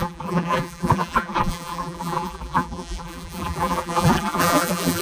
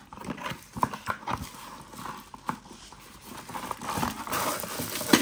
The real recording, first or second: second